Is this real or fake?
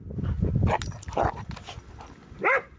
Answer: real